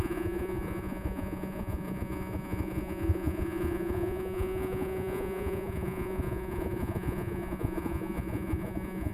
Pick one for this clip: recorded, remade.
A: remade